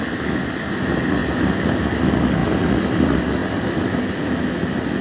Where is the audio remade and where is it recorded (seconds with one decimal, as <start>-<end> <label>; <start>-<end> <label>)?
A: 0.0-5.0 recorded